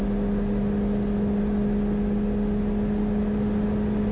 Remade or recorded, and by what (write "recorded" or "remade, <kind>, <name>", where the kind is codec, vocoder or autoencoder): recorded